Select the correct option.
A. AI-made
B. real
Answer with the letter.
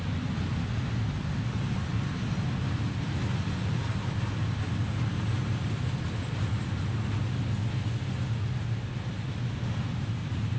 B